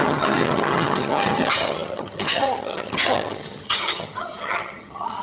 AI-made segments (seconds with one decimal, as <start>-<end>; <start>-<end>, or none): 0.0-5.2